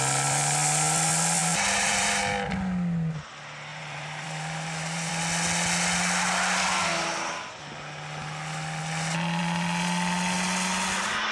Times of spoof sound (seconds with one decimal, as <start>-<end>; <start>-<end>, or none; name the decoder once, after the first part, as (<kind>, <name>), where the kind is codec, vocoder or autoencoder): 1.4-2.3 (vocoder, BigVGAN v2); 3.7-5.1